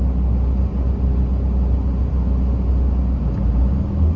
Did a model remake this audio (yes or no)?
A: no